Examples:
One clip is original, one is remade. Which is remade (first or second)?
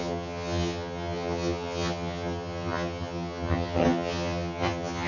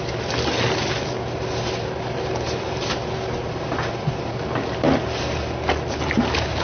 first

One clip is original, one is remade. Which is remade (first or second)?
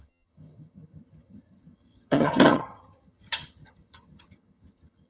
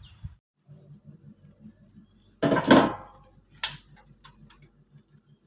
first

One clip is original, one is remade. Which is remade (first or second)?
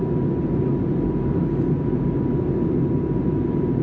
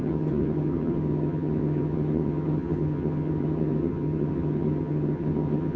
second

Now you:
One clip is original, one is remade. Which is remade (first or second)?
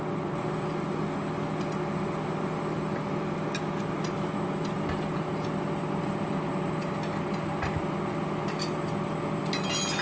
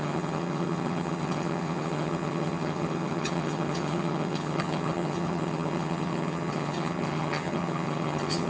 second